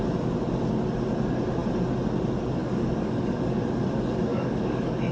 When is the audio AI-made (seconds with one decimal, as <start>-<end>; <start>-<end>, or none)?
2.6-3.6; 4.3-5.1